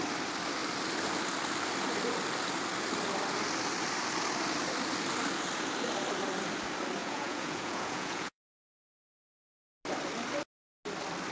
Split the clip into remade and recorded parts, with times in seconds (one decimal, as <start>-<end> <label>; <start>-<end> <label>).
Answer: 0.0-7.0 recorded; 7.0-8.4 remade; 8.4-11.3 recorded